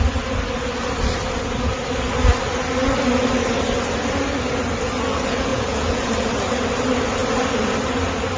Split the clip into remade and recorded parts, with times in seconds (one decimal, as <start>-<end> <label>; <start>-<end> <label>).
0.0-5.5 recorded; 5.5-6.1 remade; 6.1-8.4 recorded